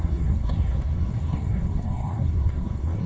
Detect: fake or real fake